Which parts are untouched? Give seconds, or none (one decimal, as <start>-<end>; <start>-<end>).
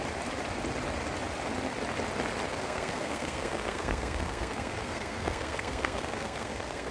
0.0-2.5